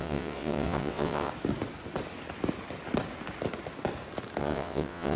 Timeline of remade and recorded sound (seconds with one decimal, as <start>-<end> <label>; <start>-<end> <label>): 0.0-1.3 remade; 1.3-4.4 recorded; 4.4-5.2 remade